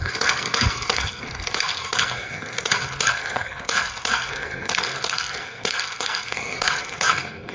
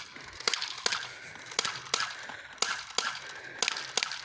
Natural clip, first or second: second